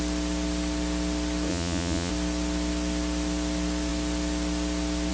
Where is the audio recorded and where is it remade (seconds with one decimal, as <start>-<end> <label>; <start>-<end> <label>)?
0.0-1.5 recorded; 1.5-2.1 remade; 2.1-5.1 recorded